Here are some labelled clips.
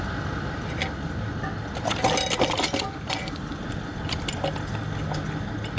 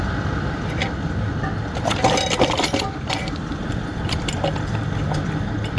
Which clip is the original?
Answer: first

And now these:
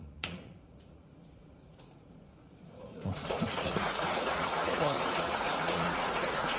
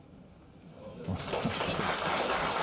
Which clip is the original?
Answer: second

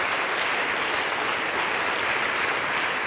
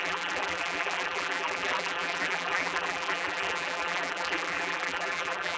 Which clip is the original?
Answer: first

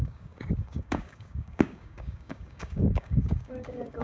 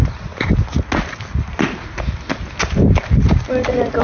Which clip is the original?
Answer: second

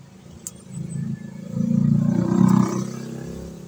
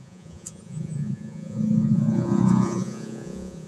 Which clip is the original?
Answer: first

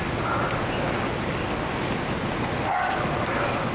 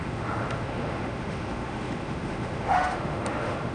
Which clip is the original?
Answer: first